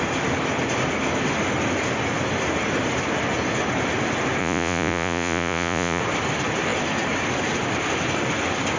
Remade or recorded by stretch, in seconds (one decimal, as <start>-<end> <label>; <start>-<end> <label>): 0.0-4.4 recorded; 4.4-6.0 remade; 6.0-8.8 recorded